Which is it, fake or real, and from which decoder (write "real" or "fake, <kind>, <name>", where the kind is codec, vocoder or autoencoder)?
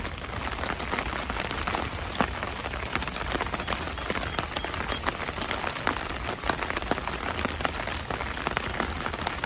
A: real